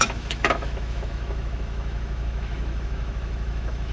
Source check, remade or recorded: remade